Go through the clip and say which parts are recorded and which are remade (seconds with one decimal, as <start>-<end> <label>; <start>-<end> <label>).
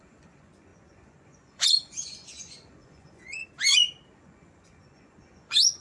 0.0-3.4 remade; 3.4-4.2 recorded; 4.2-5.8 remade